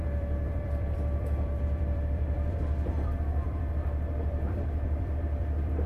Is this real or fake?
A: fake